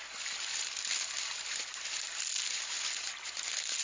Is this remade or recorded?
recorded